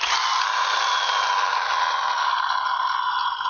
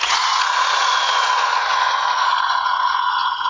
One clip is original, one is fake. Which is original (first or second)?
first